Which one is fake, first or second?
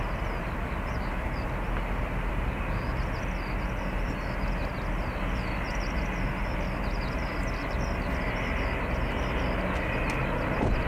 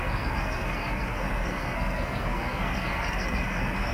second